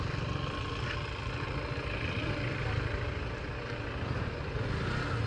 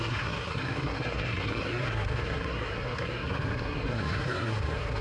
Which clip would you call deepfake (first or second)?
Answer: second